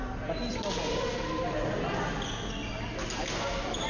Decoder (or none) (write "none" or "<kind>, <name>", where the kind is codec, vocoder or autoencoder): none